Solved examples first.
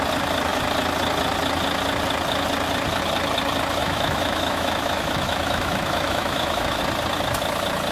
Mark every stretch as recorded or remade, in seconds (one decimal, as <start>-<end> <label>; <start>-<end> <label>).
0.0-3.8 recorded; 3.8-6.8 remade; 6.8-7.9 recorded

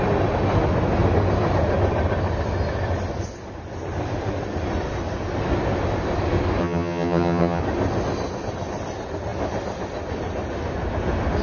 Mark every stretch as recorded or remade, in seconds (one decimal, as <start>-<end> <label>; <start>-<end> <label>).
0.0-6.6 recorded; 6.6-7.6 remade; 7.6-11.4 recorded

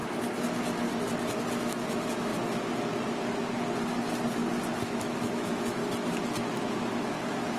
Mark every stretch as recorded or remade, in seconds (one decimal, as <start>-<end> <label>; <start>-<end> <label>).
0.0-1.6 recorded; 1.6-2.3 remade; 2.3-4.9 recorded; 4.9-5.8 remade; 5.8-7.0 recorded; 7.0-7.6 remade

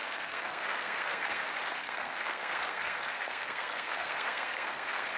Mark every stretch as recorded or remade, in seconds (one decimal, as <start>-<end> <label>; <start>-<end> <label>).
0.0-1.4 remade; 1.4-1.8 recorded; 1.8-5.2 remade

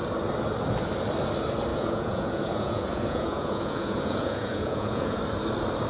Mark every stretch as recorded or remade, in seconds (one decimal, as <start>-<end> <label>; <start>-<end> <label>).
0.0-1.7 recorded; 1.7-5.2 remade; 5.2-5.9 recorded

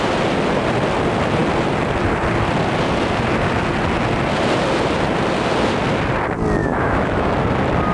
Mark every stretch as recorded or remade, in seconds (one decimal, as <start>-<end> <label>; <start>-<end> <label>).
0.0-6.6 recorded; 6.6-7.3 remade; 7.3-7.9 recorded

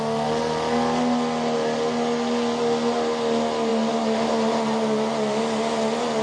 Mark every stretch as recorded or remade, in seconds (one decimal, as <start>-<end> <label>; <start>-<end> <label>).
0.0-6.2 recorded

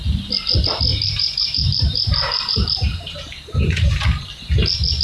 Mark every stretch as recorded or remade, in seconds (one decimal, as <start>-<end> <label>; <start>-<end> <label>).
0.0-0.9 recorded; 0.9-3.9 remade; 3.9-5.0 recorded